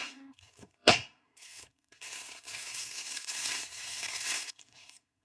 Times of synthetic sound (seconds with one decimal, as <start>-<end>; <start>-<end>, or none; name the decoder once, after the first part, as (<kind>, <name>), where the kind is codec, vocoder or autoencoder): 0.0-5.2 (codec, SNAC)